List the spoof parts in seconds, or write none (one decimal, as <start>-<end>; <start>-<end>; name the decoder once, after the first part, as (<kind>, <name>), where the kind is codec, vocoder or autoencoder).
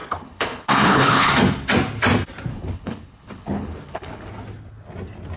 0.0-1.3 (codec, HILCodec); 2.5-4.3